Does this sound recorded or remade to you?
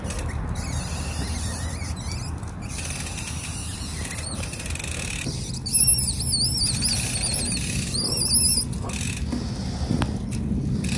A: recorded